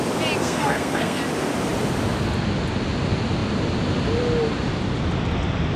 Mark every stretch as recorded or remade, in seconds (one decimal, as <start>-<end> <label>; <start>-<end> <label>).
0.0-0.4 recorded; 0.4-1.2 remade; 1.2-5.8 recorded

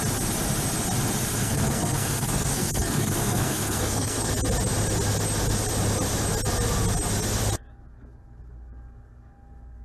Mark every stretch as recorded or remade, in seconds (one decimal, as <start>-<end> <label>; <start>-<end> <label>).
0.0-1.4 recorded; 1.4-4.3 remade; 4.3-9.8 recorded

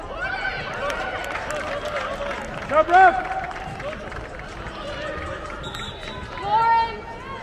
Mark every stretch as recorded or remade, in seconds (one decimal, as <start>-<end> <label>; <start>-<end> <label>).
0.0-7.4 recorded

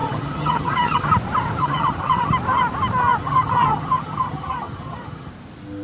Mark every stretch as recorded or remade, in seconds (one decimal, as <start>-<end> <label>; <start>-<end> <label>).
0.0-1.1 remade; 1.1-1.6 recorded; 1.6-2.3 remade; 2.3-3.2 recorded; 3.2-5.3 remade; 5.3-5.8 recorded

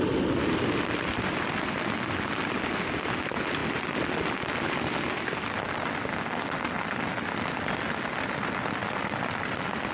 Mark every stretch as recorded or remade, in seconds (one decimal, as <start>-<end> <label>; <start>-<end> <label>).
0.0-9.9 recorded

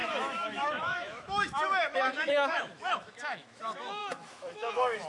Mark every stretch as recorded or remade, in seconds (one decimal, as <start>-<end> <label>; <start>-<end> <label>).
0.0-5.1 remade